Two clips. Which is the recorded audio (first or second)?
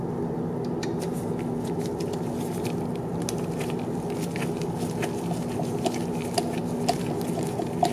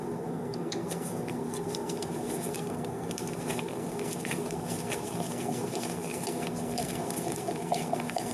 first